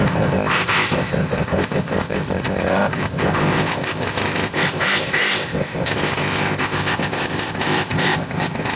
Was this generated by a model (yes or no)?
yes